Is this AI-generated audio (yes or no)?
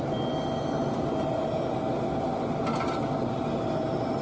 no